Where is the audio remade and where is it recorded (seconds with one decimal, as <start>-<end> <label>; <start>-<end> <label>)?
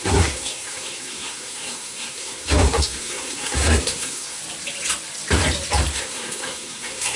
0.0-4.4 remade; 4.4-5.9 recorded; 5.9-7.2 remade